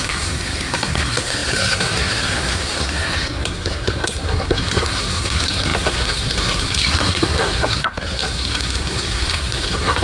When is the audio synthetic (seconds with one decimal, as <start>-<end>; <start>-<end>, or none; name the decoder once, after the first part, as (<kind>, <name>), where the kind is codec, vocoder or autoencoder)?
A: 0.0-10.0 (codec, SNAC)